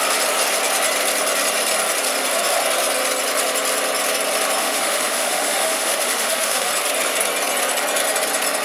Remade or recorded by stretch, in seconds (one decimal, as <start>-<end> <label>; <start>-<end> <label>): 0.0-4.6 recorded; 4.6-6.7 remade; 6.7-8.6 recorded